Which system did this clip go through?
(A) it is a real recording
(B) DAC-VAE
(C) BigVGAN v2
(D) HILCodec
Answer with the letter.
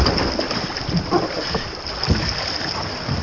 A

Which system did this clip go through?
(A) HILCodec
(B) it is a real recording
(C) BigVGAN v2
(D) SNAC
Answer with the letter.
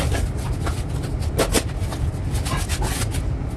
B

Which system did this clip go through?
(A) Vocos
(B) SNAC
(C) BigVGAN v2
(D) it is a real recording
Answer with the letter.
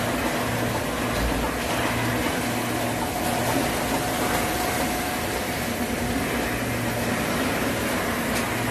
D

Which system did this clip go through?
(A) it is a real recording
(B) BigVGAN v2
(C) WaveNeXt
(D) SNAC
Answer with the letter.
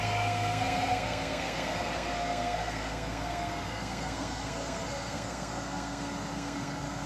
D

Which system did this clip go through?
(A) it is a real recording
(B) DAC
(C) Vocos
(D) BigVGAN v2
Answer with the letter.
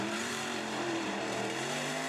D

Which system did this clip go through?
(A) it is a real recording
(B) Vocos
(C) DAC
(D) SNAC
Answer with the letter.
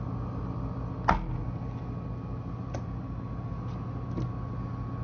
A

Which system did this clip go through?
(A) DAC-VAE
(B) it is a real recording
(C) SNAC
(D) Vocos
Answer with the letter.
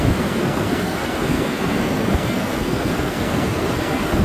C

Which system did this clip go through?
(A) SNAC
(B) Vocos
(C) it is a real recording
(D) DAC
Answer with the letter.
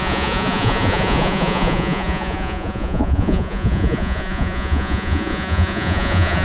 B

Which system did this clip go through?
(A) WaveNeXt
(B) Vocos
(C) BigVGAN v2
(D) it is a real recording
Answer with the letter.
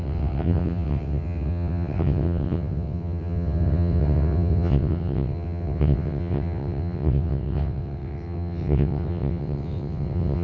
A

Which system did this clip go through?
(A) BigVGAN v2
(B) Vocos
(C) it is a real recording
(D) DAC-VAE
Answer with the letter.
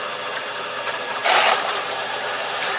A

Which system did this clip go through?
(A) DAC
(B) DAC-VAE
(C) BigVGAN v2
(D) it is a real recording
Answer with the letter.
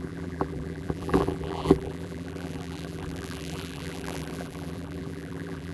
C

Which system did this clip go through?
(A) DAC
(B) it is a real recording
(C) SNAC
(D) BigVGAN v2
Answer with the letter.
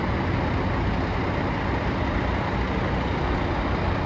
B